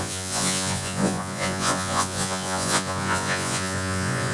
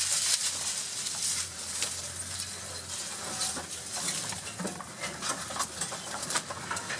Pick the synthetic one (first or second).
first